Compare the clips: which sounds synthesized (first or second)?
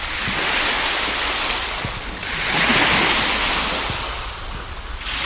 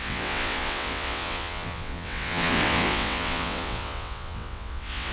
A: second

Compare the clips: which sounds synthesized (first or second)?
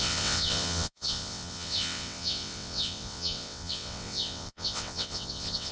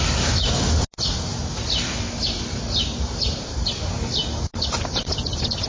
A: first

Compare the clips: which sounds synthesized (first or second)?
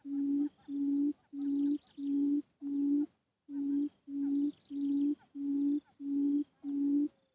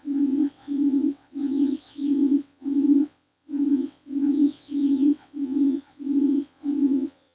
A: second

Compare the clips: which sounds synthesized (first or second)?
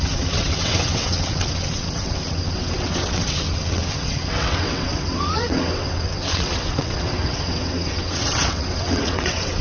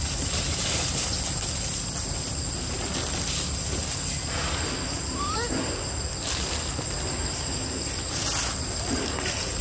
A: first